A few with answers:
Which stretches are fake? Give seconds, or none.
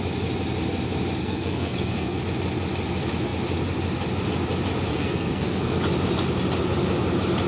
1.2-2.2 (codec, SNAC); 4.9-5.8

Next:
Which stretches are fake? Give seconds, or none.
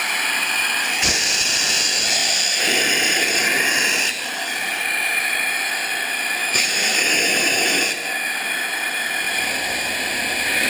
6.4-7.8 (autoencoder, DAC-VAE)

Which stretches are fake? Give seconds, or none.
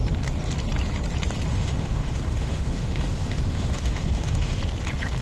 1.5-4.6 (autoencoder, DAC-VAE)